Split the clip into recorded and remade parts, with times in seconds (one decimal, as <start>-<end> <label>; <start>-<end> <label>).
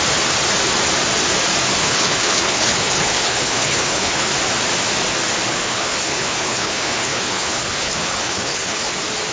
0.0-1.8 recorded; 1.8-4.3 remade; 4.3-5.5 recorded; 5.5-8.9 remade; 8.9-9.3 recorded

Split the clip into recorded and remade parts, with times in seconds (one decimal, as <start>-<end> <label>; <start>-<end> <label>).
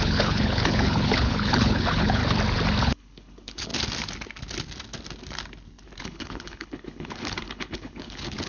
0.0-2.2 remade; 2.2-2.8 recorded; 2.8-3.7 remade; 3.7-6.0 recorded; 6.0-8.5 remade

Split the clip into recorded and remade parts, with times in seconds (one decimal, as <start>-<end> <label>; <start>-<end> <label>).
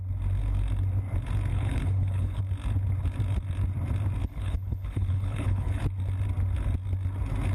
0.0-1.5 recorded; 1.5-2.4 remade; 2.4-4.2 recorded; 4.2-5.8 remade; 5.8-7.5 recorded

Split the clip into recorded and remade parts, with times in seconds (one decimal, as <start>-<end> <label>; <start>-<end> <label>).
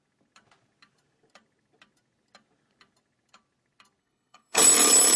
0.0-4.0 recorded; 4.0-4.6 remade; 4.6-5.2 recorded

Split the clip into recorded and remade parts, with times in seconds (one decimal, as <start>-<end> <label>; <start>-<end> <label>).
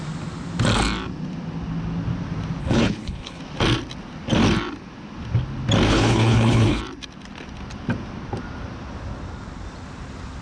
0.0-2.6 recorded; 2.6-3.4 remade; 3.4-5.9 recorded; 5.9-6.8 remade; 6.8-10.4 recorded